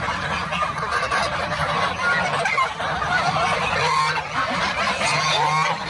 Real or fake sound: real